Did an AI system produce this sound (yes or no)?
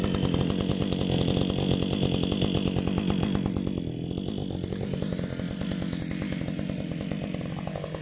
no